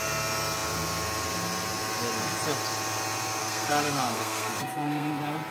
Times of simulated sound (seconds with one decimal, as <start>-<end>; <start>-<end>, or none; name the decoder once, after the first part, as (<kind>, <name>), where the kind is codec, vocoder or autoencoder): 3.4-5.1 (codec, SNAC)

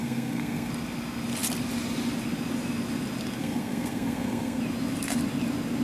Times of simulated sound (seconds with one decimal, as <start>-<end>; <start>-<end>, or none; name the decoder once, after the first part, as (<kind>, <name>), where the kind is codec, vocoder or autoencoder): 0.0-0.7 (codec, SNAC); 3.4-4.6

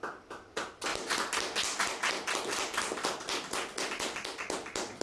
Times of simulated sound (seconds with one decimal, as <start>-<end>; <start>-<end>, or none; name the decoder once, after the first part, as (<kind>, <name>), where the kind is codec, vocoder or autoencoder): none

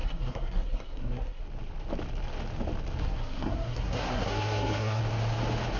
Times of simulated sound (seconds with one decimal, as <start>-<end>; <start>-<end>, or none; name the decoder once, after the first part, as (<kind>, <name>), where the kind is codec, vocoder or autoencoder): 0.0-1.4 (codec, SNAC); 3.0-5.0

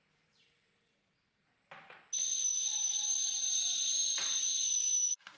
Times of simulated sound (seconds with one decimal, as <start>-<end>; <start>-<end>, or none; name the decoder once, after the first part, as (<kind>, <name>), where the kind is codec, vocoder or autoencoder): none

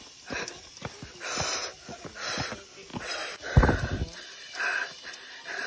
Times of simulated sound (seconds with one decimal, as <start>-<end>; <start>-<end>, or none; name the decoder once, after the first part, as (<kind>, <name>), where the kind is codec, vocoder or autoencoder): none

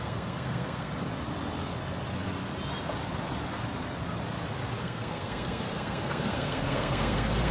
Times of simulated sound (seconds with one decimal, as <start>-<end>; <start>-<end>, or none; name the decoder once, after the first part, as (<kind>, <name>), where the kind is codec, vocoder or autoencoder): 0.0-0.9 (codec, SNAC); 4.8-7.5

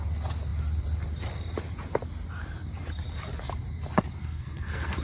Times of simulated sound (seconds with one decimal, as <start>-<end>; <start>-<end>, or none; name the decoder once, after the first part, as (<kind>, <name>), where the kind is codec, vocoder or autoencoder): 4.2-5.0 (codec, SNAC)